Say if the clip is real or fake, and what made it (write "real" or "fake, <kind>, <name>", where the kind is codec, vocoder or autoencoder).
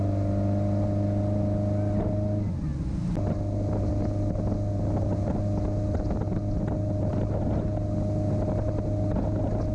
real